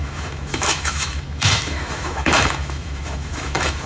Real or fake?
fake